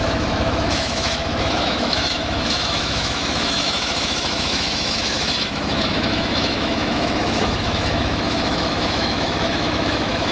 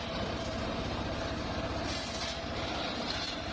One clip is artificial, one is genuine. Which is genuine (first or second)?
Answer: second